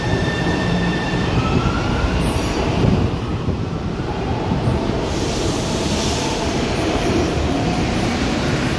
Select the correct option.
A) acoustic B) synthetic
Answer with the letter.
B